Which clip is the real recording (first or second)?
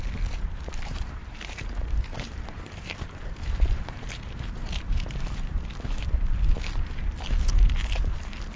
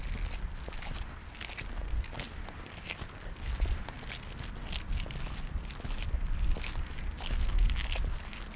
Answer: second